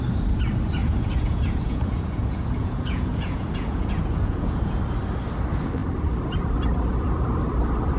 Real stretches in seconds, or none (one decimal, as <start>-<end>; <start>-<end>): 0.0-0.8; 4.8-8.0